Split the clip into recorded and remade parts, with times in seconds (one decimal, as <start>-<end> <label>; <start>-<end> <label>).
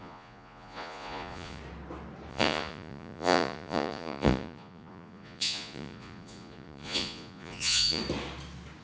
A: 0.0-1.6 remade; 1.6-2.3 recorded; 2.3-8.0 remade; 8.0-8.8 recorded